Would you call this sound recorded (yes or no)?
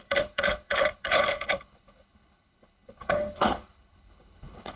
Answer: no